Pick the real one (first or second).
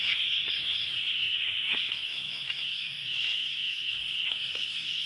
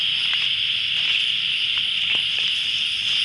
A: second